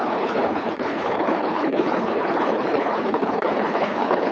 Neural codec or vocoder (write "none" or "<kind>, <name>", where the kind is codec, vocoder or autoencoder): codec, HILCodec